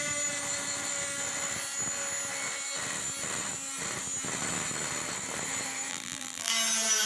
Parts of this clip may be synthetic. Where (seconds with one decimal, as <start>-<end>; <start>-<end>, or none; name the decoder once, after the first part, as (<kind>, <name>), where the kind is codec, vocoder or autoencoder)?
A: 5.9-6.5 (vocoder, BigVGAN v2)